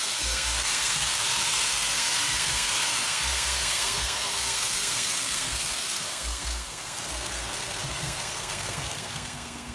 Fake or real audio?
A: fake